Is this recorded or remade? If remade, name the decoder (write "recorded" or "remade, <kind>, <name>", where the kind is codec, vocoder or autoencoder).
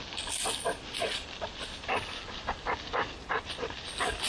recorded